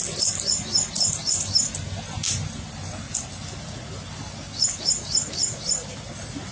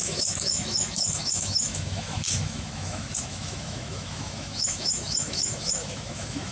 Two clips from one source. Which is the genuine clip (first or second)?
first